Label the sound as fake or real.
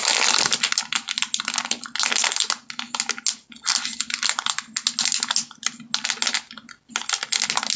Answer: real